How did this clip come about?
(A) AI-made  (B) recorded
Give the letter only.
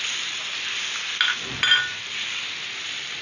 B